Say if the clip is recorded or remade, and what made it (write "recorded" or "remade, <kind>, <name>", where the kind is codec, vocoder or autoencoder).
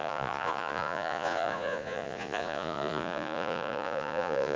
remade, vocoder, Vocos